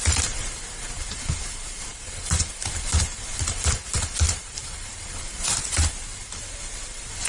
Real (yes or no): no